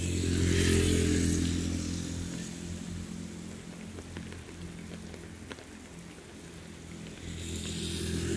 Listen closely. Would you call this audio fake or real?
real